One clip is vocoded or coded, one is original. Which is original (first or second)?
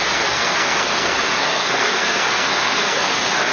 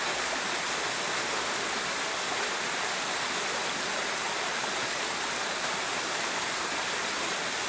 second